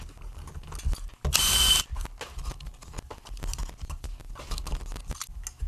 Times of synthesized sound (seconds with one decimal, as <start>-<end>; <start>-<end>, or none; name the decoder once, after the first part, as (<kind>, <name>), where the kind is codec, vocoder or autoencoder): none